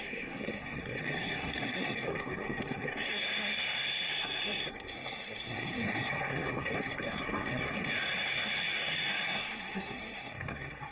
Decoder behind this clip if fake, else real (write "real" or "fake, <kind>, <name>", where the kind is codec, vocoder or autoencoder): fake, codec, SNAC